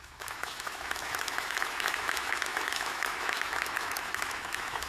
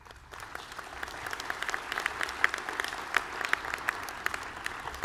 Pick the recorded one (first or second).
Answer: second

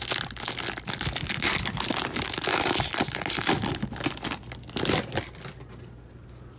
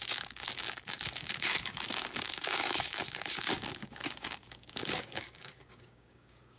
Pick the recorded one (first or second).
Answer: first